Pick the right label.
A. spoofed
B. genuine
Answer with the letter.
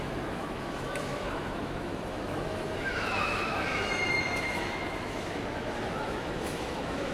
A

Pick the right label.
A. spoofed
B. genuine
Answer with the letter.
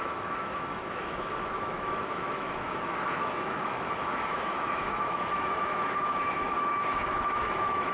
A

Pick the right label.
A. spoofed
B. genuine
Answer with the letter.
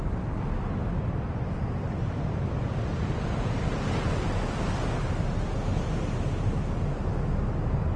B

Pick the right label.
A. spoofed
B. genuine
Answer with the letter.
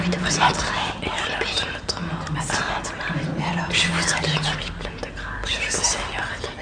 B